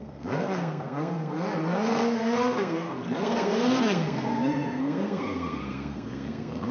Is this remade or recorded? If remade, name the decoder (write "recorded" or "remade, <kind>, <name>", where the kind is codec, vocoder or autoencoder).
remade, codec, SNAC